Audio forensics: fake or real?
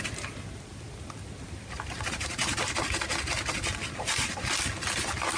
real